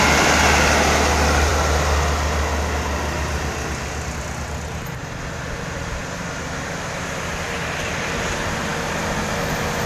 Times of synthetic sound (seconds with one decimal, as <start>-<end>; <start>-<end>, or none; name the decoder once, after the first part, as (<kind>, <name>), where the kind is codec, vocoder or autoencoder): none